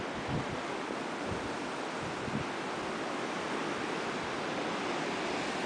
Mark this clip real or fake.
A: real